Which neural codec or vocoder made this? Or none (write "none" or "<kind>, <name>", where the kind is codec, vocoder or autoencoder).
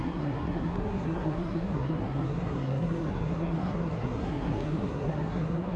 codec, SNAC